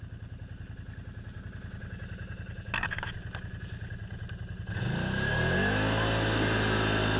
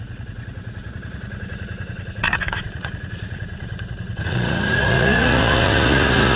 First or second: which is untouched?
first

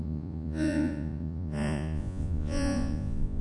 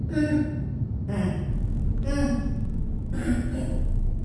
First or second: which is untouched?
second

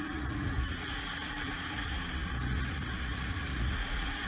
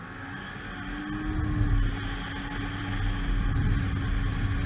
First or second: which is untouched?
second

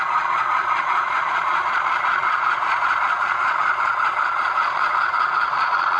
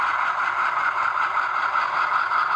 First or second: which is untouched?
second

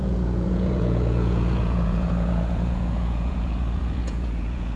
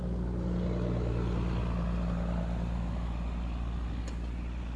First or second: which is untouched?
second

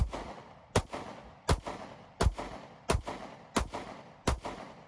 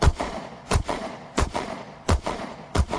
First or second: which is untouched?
first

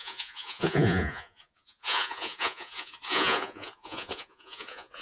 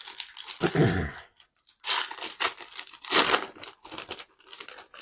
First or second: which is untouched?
second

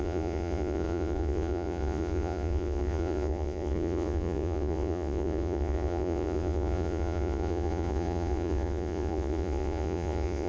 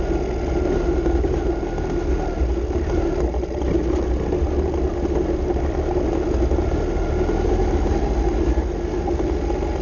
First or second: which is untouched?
second